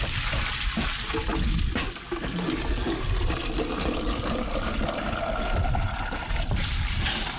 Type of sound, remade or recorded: recorded